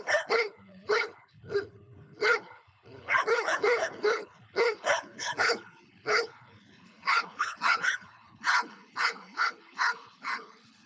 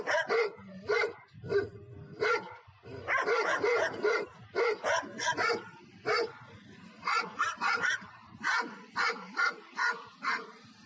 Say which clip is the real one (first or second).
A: second